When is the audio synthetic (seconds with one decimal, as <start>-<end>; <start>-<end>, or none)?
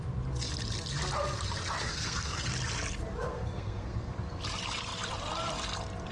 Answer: 1.8-2.5; 3.2-4.1